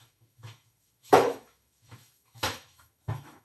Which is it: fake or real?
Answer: fake